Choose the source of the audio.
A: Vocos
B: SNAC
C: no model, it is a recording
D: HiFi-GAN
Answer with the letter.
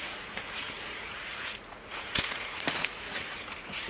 A